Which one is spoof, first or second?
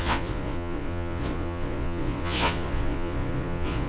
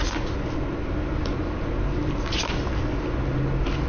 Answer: first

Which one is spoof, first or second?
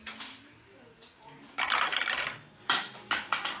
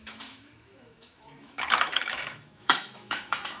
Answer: second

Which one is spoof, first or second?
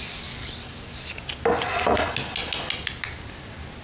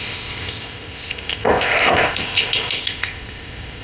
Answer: second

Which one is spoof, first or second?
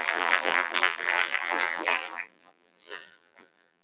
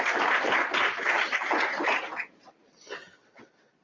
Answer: first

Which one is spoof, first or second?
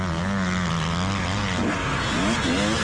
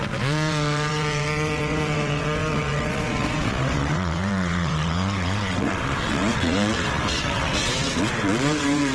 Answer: second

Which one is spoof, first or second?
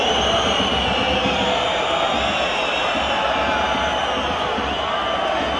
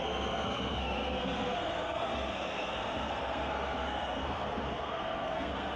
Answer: second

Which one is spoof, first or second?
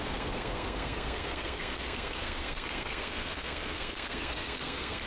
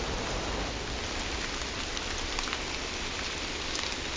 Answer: first